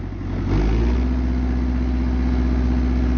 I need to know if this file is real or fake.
real